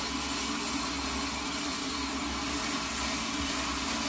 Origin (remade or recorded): recorded